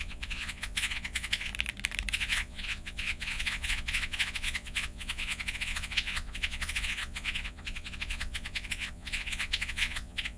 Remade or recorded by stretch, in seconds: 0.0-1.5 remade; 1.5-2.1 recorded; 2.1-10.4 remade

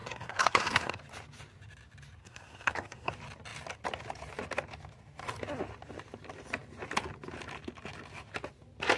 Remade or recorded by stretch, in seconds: 0.0-1.0 remade; 1.0-2.2 recorded; 2.2-3.1 remade; 3.1-9.0 recorded

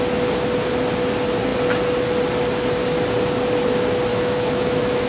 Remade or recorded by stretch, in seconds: 0.0-4.1 recorded; 4.1-5.1 remade

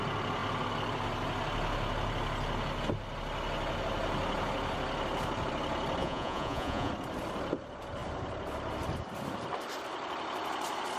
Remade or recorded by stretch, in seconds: 0.0-6.0 recorded; 6.0-6.9 remade; 6.9-11.0 recorded

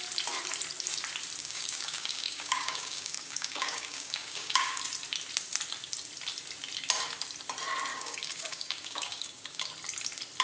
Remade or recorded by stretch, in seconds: 0.0-1.4 recorded; 1.4-4.8 remade; 4.8-7.9 recorded; 7.9-9.7 remade; 9.7-10.4 recorded

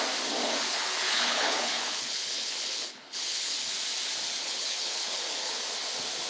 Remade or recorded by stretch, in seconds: 0.0-0.4 recorded; 0.4-3.7 remade; 3.7-4.2 recorded; 4.2-5.6 remade; 5.6-6.3 recorded